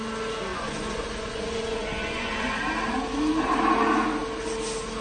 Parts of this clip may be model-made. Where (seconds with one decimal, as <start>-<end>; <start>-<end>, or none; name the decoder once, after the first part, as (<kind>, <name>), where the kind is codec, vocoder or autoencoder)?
0.5-2.6 (vocoder, Vocos)